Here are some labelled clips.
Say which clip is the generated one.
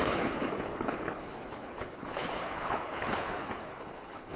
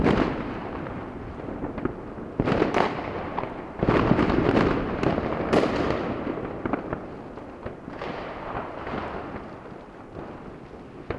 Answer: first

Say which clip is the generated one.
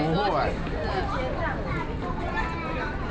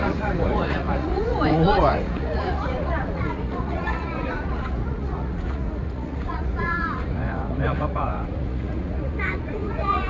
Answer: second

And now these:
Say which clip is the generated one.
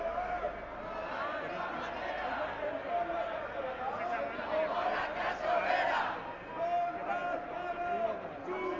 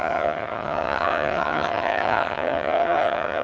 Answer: second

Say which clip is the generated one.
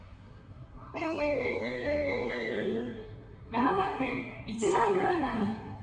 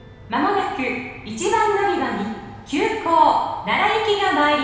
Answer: first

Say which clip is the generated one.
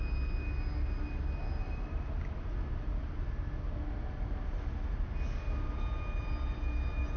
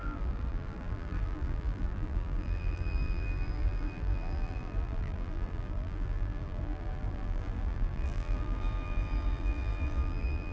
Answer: second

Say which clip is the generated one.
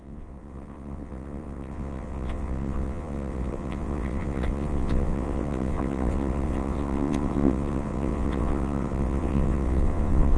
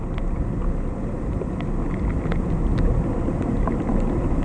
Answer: first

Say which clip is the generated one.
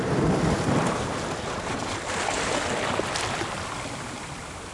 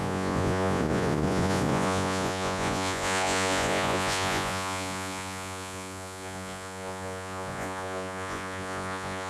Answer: second